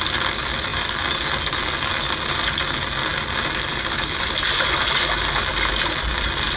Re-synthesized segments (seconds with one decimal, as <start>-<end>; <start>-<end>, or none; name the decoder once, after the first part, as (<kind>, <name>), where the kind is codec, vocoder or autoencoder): none